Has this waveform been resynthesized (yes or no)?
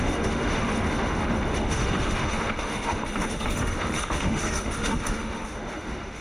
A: yes